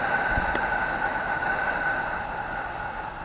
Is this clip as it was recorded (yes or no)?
yes